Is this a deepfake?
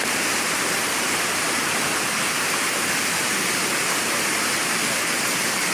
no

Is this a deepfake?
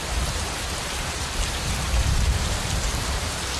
yes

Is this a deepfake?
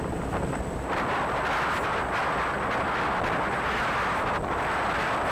no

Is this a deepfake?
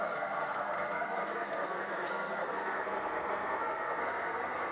yes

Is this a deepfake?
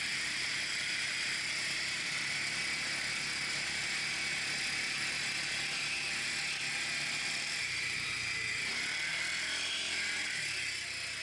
no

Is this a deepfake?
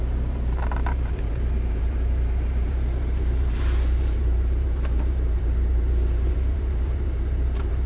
yes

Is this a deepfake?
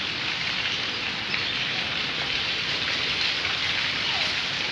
no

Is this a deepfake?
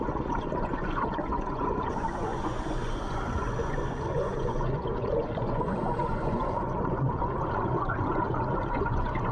yes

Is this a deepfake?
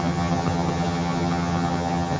yes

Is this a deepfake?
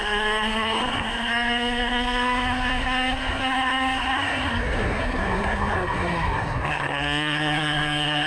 yes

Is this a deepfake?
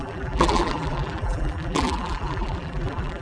yes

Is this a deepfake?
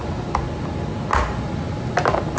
no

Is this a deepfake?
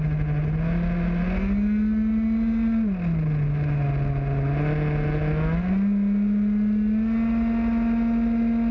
no